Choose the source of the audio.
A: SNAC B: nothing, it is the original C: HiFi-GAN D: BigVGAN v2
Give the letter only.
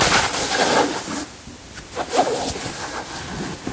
B